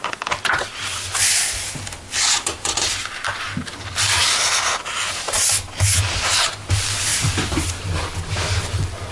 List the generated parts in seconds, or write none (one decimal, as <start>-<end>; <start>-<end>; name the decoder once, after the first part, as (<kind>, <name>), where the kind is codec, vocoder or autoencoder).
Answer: 4.2-5.4 (vocoder, BigVGAN v2); 7.1-7.7